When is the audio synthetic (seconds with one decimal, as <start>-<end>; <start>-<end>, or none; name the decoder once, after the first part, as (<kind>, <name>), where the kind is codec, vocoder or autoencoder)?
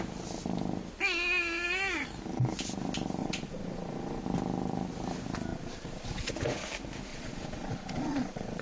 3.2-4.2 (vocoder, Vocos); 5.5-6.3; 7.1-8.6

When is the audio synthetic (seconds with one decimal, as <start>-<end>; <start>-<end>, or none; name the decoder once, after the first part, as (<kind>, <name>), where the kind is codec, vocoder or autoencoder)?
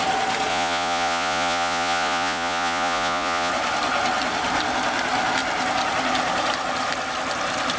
0.5-3.5 (vocoder, Vocos)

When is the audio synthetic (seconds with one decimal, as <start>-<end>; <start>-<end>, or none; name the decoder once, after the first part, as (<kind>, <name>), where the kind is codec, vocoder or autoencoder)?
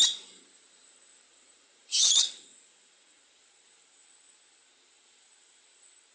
1.3-3.4 (vocoder, Vocos)